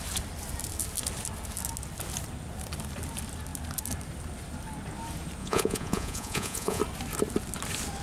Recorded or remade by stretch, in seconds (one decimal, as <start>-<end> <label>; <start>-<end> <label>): 0.0-5.4 recorded; 5.4-6.8 remade; 6.8-8.0 recorded

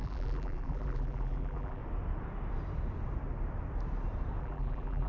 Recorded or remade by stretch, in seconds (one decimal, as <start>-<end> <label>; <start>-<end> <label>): 0.0-1.8 remade; 1.8-4.4 recorded; 4.4-5.1 remade